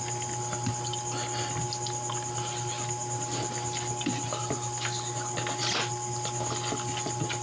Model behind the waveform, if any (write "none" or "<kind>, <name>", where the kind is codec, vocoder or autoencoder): none